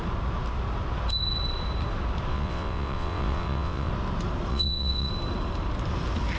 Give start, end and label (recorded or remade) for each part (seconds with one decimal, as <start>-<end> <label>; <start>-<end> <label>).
0.0-2.3 recorded; 2.3-3.9 remade; 3.9-4.5 recorded; 4.5-5.1 remade; 5.1-6.4 recorded